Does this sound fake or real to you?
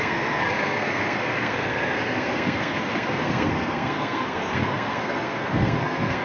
fake